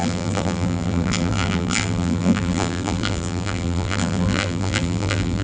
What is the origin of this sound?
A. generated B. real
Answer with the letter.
A